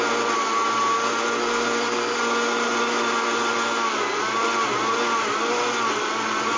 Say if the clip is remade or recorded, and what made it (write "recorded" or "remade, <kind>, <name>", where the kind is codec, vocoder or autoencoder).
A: recorded